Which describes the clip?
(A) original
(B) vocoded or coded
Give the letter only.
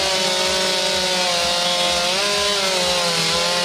A